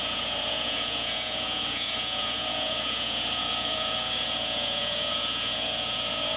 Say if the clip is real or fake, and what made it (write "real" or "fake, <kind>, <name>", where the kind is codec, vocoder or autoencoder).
fake, vocoder, Vocos